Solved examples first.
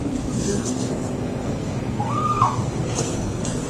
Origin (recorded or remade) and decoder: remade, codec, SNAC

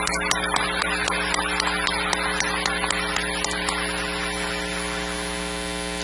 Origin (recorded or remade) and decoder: recorded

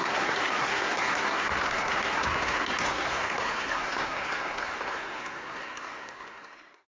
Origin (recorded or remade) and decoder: remade, codec, SNAC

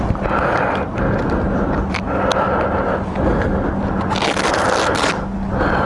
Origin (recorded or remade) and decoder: recorded